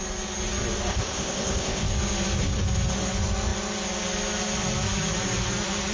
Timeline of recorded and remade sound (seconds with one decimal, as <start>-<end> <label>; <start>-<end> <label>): 0.0-0.9 recorded; 0.9-1.9 remade; 1.9-5.9 recorded